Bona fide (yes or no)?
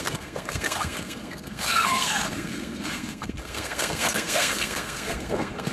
no